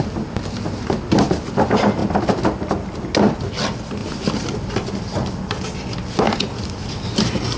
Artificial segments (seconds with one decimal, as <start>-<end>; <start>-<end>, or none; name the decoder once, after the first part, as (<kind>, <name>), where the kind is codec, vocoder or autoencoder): none